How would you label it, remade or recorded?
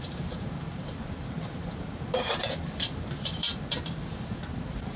remade